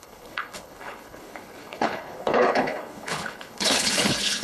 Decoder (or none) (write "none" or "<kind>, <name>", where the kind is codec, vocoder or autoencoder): codec, HILCodec